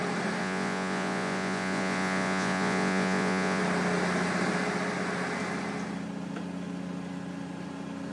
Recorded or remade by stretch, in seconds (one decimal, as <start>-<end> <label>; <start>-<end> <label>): 0.0-0.4 recorded; 0.4-3.6 remade; 3.6-8.1 recorded